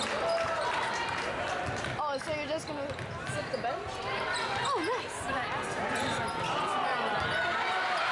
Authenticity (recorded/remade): recorded